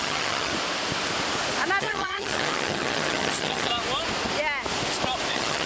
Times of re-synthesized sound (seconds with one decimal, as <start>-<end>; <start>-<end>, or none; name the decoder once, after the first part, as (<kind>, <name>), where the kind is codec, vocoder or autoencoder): 0.0-0.5 (vocoder, HiFi-GAN); 1.8-3.7; 5.3-5.7